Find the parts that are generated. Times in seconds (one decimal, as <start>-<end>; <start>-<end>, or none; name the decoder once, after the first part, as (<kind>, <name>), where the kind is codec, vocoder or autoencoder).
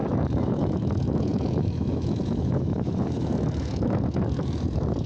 0.0-5.1 (autoencoder, DAC-VAE)